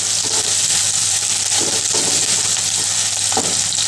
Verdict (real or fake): real